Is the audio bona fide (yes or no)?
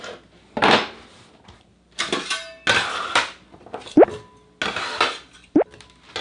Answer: yes